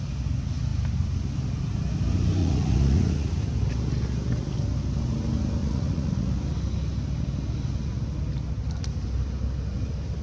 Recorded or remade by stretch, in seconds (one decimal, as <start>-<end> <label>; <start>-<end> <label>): 0.0-2.4 recorded; 2.4-3.3 remade; 3.3-5.6 recorded; 5.6-6.3 remade; 6.3-10.2 recorded